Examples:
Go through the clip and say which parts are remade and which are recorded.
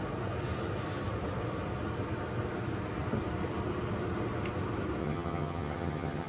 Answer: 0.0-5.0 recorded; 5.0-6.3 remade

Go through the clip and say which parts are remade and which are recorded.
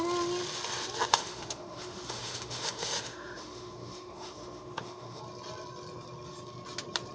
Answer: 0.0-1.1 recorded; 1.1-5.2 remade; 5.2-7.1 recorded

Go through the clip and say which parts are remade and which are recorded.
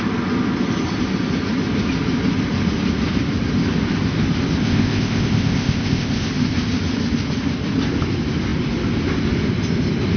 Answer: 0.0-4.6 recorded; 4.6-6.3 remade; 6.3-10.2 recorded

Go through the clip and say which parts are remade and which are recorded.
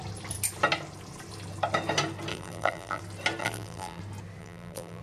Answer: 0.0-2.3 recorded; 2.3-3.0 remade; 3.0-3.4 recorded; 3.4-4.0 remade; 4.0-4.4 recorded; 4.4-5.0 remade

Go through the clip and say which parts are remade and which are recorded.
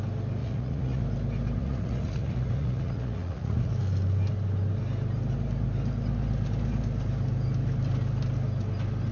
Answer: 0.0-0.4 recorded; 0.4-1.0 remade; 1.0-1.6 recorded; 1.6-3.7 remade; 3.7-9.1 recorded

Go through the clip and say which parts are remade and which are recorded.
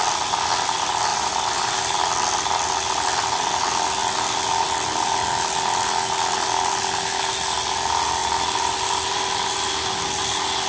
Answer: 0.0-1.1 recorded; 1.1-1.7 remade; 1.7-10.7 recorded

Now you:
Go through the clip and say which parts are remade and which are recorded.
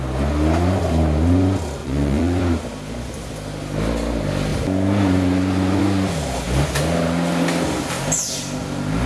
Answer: 0.0-1.8 recorded; 1.8-2.4 remade; 2.4-9.1 recorded